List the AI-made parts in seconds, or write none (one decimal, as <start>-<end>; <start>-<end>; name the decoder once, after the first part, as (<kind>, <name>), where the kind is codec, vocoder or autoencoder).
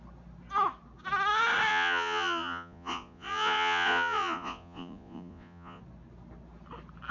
1.7-5.8 (vocoder, Vocos)